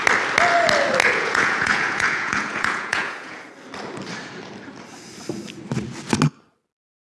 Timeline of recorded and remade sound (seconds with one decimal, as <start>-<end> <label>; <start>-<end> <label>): 0.0-1.0 recorded; 1.0-3.5 remade; 3.5-7.0 recorded